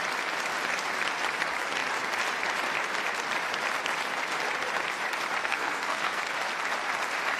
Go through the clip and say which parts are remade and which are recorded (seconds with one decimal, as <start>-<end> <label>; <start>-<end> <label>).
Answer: 0.0-5.4 recorded; 5.4-6.2 remade; 6.2-7.4 recorded